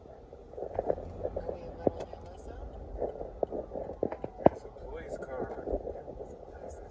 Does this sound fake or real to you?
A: real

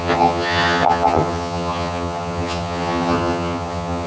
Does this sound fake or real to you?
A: fake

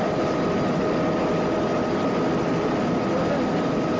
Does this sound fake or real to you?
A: real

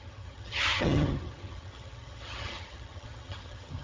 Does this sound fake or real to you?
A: fake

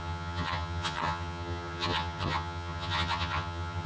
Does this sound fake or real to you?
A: fake